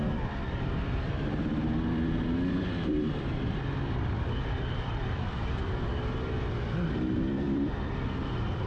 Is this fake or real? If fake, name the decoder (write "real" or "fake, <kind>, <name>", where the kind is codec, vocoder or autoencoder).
fake, vocoder, BigVGAN v2